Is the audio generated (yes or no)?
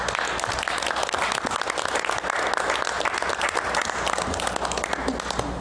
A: no